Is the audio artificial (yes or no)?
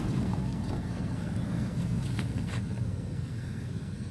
yes